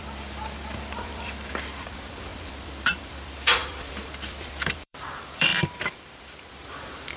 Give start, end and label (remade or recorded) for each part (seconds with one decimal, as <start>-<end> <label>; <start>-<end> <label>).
0.0-7.2 remade